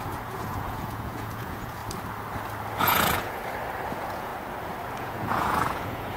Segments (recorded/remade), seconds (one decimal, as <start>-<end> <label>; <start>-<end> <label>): 0.0-1.8 remade; 1.8-2.8 recorded; 2.8-3.4 remade; 3.4-3.9 recorded; 3.9-4.3 remade; 4.3-5.0 recorded; 5.0-6.2 remade